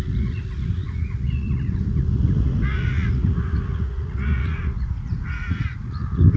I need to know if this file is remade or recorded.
remade